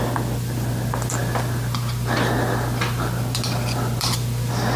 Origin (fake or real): real